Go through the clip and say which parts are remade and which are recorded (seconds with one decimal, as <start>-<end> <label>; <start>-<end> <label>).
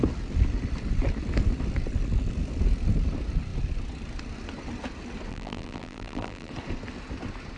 0.0-5.3 recorded; 5.3-6.5 remade; 6.5-7.6 recorded